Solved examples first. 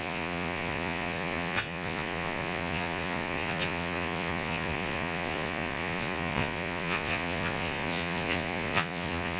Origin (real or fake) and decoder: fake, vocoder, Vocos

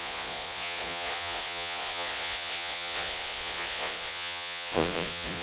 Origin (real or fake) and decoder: fake, vocoder, Vocos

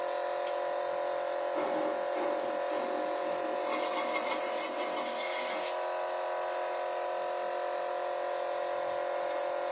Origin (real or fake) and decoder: real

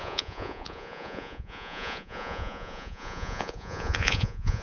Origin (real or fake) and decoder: fake, vocoder, Vocos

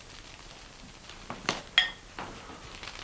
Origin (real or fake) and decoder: real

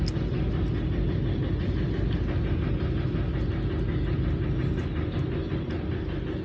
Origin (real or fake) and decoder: real